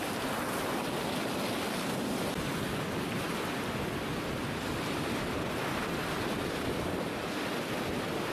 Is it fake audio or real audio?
real